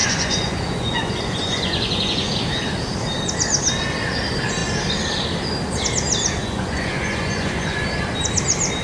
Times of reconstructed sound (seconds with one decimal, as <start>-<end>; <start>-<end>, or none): 0.0-2.3; 6.4-7.8